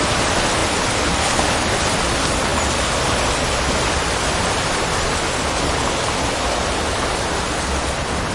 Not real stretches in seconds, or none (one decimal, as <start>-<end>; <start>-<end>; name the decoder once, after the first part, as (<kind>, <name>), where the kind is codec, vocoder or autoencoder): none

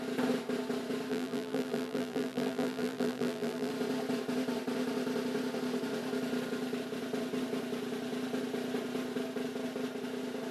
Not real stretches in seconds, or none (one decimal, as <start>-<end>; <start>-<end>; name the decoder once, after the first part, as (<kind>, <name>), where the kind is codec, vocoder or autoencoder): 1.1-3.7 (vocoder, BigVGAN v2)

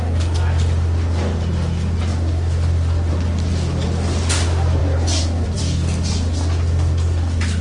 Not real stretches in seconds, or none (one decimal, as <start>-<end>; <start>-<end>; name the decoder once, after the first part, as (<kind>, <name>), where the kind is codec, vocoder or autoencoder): 4.8-5.6 (vocoder, BigVGAN v2)